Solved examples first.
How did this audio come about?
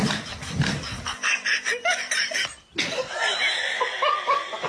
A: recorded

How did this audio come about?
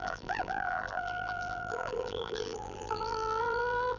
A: remade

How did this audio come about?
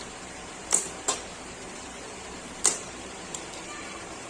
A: remade